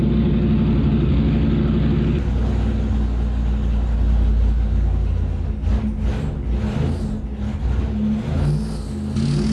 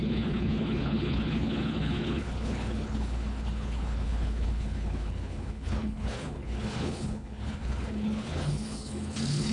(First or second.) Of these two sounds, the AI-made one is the second